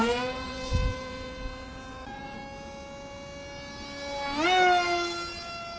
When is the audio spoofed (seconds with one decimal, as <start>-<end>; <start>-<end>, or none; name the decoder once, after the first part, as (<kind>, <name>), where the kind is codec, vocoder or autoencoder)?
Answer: 0.0-2.4 (vocoder, Vocos)